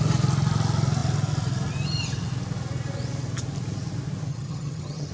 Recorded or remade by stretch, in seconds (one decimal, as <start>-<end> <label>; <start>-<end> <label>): 0.0-4.3 recorded; 4.3-5.1 remade